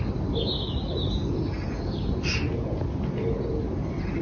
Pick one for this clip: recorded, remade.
recorded